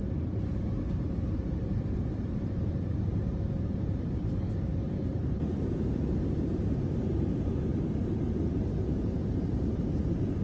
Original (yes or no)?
no